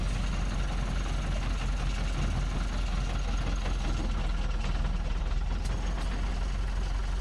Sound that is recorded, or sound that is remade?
recorded